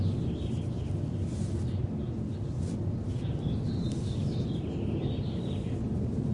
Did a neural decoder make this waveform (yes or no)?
no